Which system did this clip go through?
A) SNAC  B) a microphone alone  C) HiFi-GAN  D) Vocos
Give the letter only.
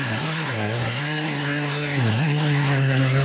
A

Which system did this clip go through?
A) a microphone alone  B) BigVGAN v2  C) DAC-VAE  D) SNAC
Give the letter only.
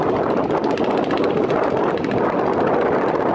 A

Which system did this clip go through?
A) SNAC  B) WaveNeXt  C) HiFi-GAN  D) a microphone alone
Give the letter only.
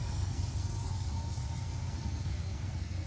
A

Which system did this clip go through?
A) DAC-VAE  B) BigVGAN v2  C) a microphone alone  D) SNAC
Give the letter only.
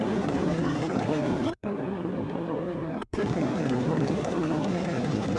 D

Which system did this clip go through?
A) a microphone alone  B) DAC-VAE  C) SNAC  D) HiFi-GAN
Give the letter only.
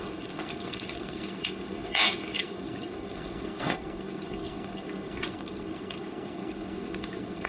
C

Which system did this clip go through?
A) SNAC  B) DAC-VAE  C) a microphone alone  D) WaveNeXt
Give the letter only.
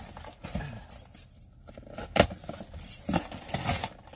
C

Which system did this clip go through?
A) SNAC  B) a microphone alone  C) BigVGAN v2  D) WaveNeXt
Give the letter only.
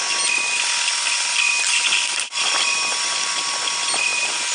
B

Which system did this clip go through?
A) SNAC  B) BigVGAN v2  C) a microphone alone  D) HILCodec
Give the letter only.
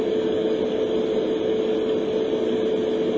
C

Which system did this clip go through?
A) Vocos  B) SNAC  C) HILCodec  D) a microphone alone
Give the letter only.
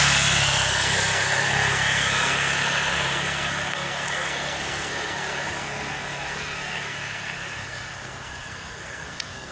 B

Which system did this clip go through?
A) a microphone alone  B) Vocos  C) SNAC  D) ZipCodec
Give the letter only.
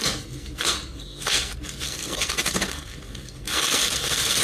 C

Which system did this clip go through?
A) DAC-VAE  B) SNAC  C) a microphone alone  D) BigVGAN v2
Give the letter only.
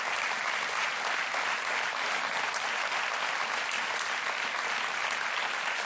C